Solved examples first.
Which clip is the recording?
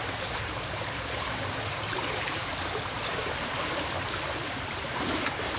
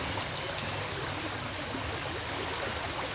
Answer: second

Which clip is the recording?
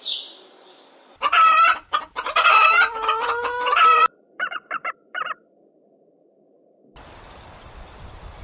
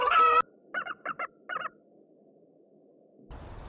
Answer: second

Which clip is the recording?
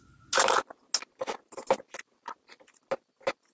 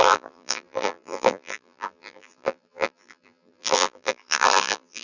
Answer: first